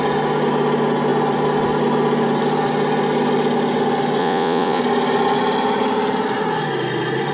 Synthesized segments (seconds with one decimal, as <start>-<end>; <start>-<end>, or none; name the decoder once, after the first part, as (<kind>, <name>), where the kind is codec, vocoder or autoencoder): 4.2-4.8 (vocoder, Vocos)